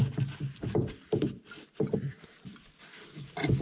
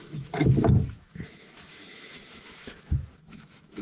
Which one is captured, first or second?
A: first